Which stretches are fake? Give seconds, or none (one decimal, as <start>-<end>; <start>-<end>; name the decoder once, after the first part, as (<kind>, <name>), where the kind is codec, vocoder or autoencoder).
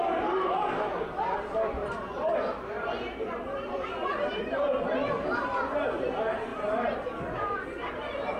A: 0.9-5.1 (vocoder, BigVGAN v2); 6.5-7.6